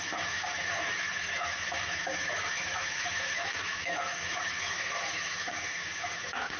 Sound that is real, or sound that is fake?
fake